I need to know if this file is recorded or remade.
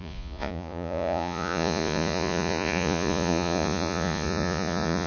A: remade